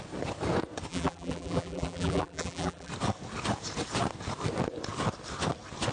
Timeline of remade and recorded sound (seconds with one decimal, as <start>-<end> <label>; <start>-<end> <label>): 0.0-0.9 recorded; 0.9-2.9 remade; 2.9-5.9 recorded